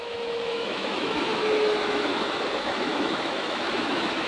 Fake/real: fake